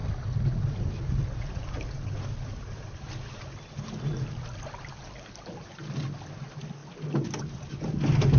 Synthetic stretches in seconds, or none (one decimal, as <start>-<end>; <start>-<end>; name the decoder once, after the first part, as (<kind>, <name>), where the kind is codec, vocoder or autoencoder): none